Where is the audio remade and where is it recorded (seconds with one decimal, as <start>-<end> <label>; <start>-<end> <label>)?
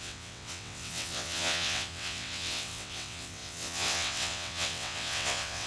0.0-5.7 remade